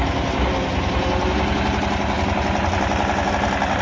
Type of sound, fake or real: real